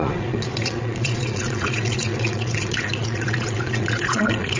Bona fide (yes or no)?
no